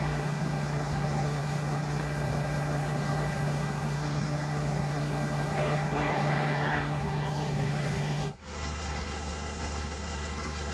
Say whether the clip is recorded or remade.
remade